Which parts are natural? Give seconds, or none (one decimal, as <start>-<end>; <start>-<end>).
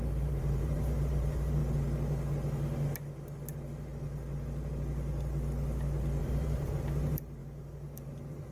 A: 1.6-6.2